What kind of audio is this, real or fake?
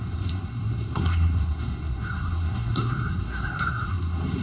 fake